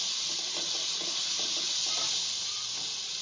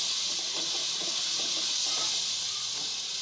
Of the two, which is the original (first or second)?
first